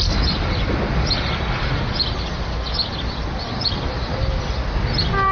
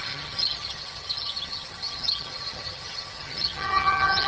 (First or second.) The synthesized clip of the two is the second